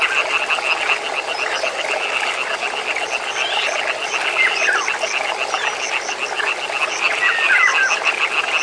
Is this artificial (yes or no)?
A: no